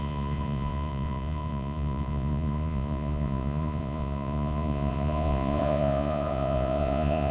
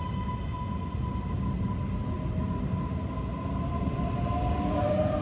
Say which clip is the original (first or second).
second